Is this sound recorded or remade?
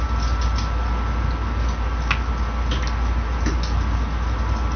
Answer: recorded